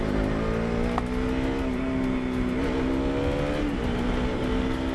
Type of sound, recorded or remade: recorded